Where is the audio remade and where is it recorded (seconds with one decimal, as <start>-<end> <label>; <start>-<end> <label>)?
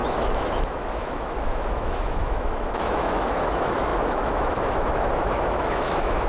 0.0-6.3 remade